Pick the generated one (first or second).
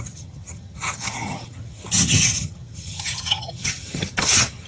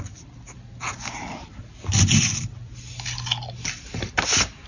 first